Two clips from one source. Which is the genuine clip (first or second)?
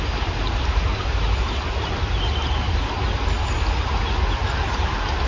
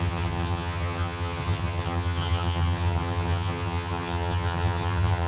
first